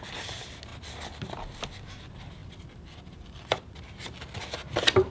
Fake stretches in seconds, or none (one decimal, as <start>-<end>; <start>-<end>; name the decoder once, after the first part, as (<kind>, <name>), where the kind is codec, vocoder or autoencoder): 2.4-3.6 (vocoder, BigVGAN v2)